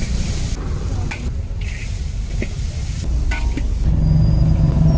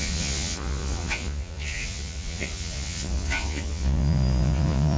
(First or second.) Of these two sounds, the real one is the first